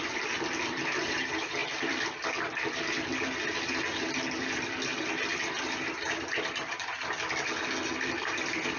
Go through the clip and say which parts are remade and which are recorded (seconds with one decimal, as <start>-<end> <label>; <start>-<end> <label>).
0.0-1.6 recorded; 1.6-2.7 remade; 2.7-8.8 recorded